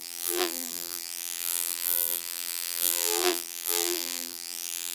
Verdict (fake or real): fake